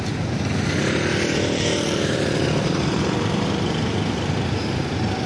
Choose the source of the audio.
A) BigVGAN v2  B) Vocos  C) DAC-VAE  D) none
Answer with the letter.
A